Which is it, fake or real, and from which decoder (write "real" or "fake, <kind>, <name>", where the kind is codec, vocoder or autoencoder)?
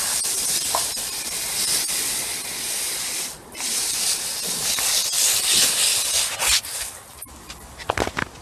fake, vocoder, BigVGAN v2